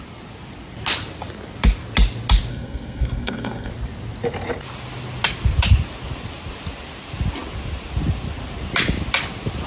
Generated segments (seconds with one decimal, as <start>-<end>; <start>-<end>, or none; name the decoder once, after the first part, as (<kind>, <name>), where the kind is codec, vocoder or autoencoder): 2.5-3.7 (codec, SNAC)

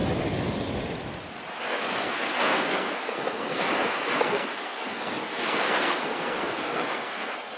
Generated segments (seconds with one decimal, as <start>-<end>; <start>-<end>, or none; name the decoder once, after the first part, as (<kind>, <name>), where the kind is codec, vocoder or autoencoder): 1.6-7.6 (codec, SNAC)

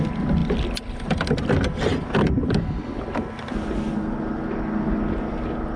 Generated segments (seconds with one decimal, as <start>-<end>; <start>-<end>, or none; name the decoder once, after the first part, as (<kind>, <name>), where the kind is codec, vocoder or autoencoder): none

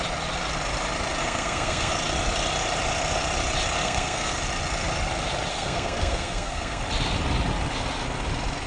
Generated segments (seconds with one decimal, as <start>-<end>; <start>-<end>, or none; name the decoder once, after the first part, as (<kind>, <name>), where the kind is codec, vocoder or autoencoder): 1.2-1.9 (codec, SNAC); 3.8-4.4; 5.5-6.8

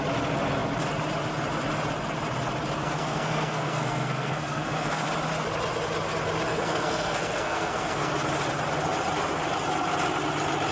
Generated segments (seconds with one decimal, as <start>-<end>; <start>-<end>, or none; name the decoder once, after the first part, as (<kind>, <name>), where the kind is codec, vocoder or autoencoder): 2.8-5.1 (codec, SNAC); 6.5-8.1